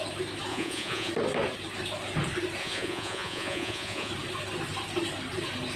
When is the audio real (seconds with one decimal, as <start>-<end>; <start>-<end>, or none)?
0.0-0.5; 1.1-2.6; 4.1-5.8